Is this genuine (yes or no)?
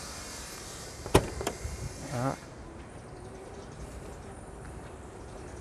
no